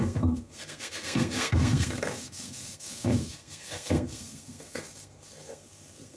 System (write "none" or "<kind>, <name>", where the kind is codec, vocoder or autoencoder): codec, SNAC